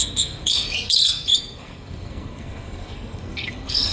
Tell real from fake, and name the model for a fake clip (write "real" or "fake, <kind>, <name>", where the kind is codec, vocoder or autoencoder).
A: fake, codec, SNAC